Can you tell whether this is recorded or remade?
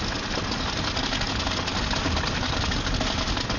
recorded